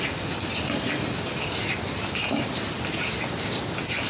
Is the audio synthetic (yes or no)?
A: no